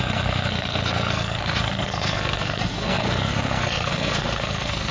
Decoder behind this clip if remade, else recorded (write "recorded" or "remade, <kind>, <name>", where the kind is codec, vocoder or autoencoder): remade, codec, SNAC